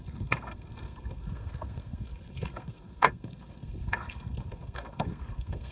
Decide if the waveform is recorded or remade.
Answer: remade